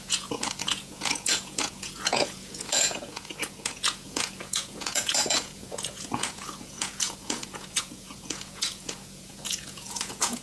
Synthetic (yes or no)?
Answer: yes